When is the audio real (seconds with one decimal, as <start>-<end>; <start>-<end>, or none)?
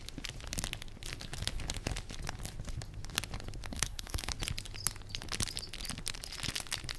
0.0-3.7; 4.3-7.0